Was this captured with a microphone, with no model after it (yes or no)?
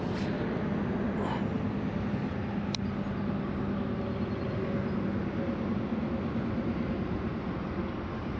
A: yes